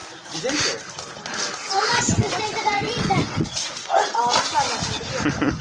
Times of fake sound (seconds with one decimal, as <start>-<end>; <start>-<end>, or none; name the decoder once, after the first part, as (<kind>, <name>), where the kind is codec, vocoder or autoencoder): 1.6-4.2 (vocoder, WaveNeXt)